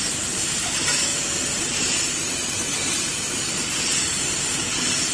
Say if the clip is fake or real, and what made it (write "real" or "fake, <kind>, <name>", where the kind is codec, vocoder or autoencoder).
fake, vocoder, BigVGAN v2